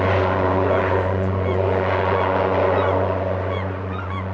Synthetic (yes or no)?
yes